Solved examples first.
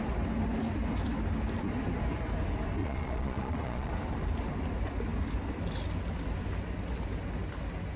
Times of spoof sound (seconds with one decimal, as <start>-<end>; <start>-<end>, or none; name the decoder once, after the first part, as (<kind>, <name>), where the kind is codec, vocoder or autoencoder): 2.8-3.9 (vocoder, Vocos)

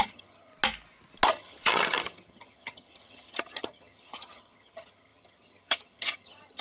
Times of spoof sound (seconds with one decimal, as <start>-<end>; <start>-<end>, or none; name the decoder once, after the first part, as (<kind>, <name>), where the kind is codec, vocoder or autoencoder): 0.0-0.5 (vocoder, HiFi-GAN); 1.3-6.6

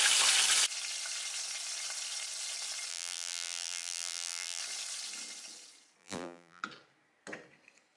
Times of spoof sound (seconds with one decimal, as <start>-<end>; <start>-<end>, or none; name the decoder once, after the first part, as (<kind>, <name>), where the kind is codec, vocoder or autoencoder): 2.9-4.6 (vocoder, BigVGAN v2); 6.0-6.6